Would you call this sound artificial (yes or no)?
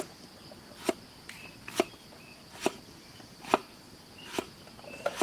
no